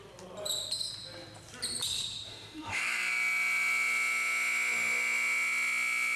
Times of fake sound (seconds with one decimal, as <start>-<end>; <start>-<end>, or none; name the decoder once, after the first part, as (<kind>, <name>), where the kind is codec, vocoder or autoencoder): 2.3-6.2 (autoencoder, DAC-VAE)